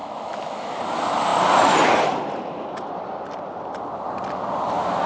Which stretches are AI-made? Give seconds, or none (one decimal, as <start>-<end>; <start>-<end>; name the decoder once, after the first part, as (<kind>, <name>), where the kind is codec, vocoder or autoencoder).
0.0-0.8 (autoencoder, DAC-VAE)